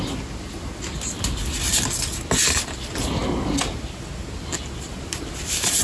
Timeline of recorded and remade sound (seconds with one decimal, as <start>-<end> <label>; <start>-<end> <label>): 0.0-5.8 recorded